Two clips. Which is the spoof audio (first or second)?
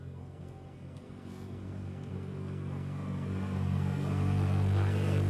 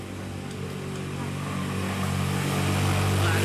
first